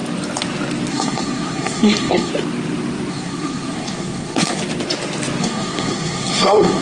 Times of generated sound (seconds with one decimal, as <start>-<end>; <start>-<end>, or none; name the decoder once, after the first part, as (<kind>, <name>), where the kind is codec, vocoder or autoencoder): 0.9-2.3 (codec, SNAC); 3.1-4.6; 5.4-6.8